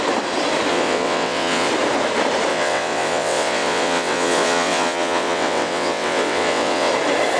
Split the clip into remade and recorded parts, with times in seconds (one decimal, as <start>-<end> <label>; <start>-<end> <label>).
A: 0.0-0.7 recorded; 0.7-1.7 remade; 1.7-2.5 recorded; 2.5-6.9 remade; 6.9-7.4 recorded